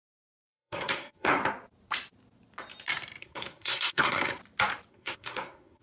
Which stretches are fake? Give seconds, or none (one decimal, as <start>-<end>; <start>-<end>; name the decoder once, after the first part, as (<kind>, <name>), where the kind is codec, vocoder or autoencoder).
0.0-1.4 (codec, SNAC); 3.2-4.4; 4.9-5.8